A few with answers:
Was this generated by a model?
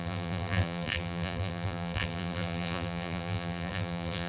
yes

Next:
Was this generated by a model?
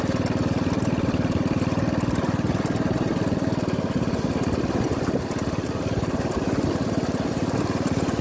no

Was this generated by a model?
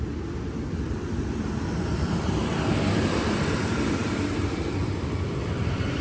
yes